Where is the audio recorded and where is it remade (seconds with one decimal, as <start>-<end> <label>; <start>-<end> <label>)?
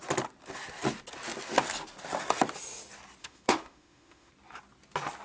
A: 0.0-3.2 recorded; 3.2-4.3 remade; 4.3-5.2 recorded